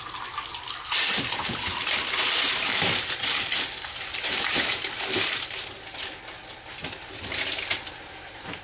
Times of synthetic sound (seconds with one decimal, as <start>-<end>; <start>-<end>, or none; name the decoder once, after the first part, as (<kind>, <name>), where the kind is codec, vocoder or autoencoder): 1.1-1.9 (vocoder, BigVGAN v2); 2.7-5.0